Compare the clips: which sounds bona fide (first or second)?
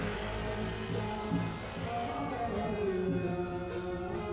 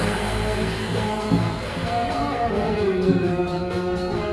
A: first